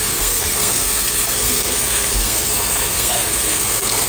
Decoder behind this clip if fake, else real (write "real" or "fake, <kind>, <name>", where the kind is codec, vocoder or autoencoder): fake, codec, SNAC